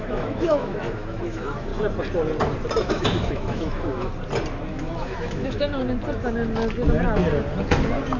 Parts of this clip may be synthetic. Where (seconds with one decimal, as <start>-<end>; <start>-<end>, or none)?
0.0-1.7; 2.8-4.1; 4.7-5.8